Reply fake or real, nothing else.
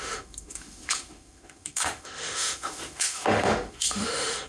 fake